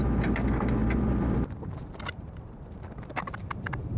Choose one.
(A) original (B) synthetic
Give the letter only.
B